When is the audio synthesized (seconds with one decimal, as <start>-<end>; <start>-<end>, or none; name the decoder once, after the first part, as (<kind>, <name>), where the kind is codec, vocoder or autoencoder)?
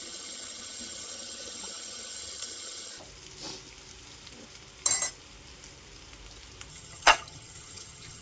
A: 0.0-2.9 (vocoder, HiFi-GAN); 6.7-8.2